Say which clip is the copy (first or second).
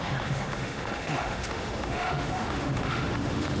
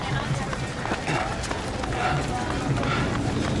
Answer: first